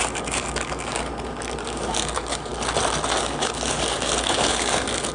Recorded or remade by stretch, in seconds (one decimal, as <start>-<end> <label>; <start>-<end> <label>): 0.0-1.1 remade; 1.1-1.6 recorded; 1.6-2.5 remade; 2.5-3.2 recorded; 3.2-5.1 remade